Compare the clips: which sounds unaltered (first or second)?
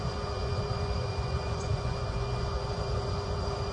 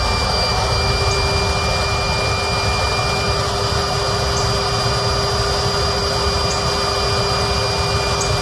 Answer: second